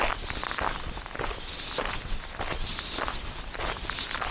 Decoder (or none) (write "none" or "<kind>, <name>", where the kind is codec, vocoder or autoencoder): none